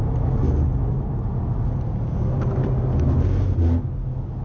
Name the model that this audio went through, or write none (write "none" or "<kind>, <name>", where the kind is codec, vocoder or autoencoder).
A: none